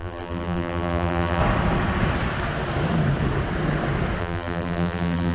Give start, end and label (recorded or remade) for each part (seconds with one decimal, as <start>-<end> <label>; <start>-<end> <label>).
0.0-1.4 remade; 1.4-4.2 recorded; 4.2-5.3 remade